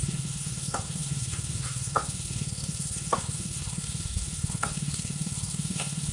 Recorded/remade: remade